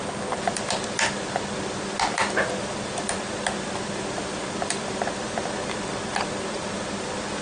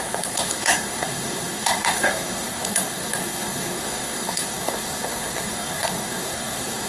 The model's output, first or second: second